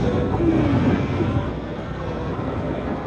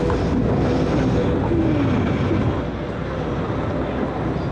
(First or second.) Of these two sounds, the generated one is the first